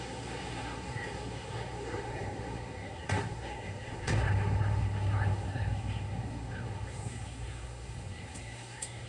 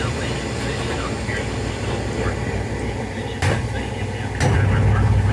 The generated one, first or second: first